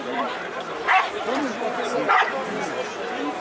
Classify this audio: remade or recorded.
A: recorded